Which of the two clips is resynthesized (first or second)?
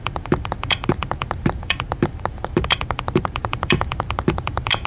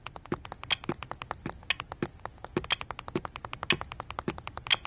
first